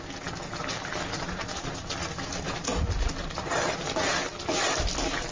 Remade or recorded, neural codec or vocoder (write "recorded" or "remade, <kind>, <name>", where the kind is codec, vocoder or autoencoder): recorded